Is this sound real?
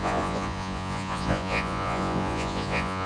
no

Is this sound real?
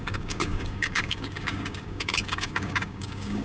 no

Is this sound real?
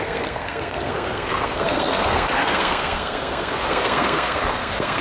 no